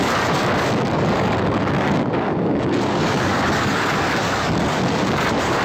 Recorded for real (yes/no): no